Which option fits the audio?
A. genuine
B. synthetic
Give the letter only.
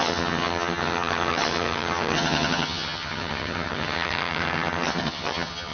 B